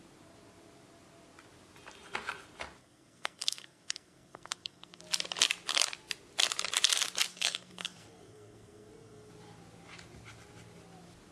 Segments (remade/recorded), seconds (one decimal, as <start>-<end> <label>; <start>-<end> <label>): 0.0-2.8 recorded; 2.8-5.0 remade; 5.0-7.3 recorded; 7.3-9.3 remade; 9.3-11.3 recorded